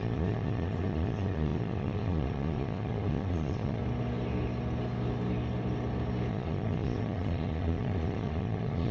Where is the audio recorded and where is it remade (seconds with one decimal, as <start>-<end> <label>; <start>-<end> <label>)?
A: 0.0-3.8 remade; 3.8-6.3 recorded; 6.3-8.9 remade